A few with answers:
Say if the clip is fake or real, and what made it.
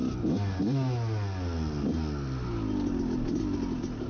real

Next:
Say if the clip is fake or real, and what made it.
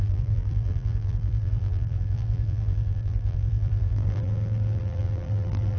fake, vocoder, BigVGAN v2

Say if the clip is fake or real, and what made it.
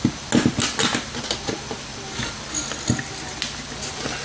real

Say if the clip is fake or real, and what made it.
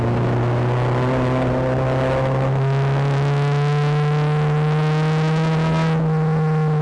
real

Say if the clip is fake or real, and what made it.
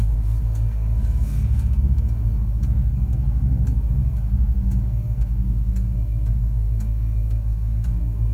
fake, codec, SNAC